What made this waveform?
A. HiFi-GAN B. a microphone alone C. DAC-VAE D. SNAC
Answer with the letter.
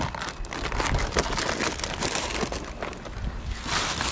B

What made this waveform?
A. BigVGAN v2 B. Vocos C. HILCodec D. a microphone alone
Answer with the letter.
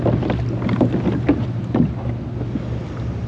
D